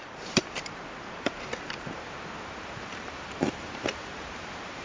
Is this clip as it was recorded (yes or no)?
no